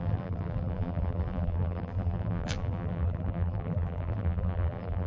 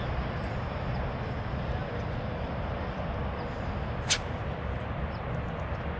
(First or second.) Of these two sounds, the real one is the second